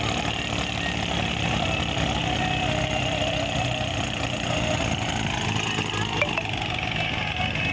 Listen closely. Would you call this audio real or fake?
real